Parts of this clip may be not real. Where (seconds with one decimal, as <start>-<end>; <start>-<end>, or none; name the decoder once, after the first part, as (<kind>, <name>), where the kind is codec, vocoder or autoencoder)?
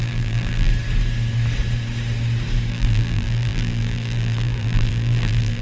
0.0-0.7 (vocoder, BigVGAN v2); 2.7-5.6